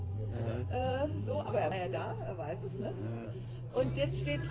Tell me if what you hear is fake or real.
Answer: fake